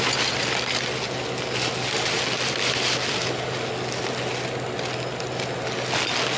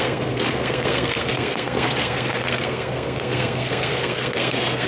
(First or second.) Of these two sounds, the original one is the first